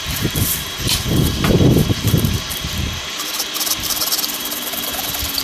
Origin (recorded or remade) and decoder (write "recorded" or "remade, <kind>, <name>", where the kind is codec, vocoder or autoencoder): remade, vocoder, BigVGAN v2